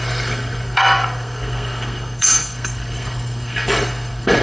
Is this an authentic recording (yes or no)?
no